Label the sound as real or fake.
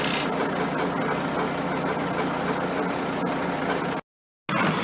real